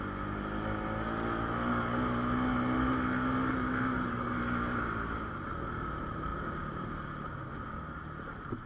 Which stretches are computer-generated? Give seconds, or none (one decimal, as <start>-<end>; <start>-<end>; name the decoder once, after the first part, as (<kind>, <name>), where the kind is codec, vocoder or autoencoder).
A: none